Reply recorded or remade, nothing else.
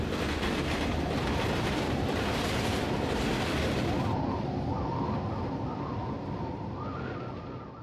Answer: recorded